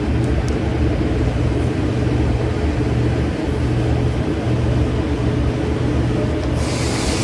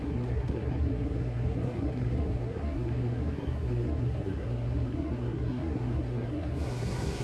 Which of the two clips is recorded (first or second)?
first